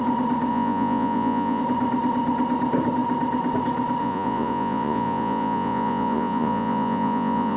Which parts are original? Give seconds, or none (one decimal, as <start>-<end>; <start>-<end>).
0.0-0.5; 1.6-4.0